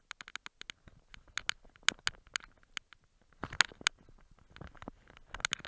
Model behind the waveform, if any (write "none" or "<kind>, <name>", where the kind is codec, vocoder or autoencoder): none